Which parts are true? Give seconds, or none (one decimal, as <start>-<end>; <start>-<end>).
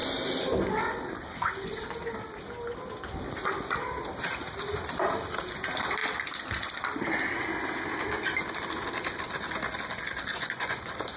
0.0-10.3